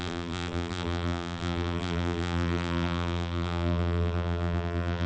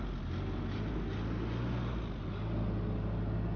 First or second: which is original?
second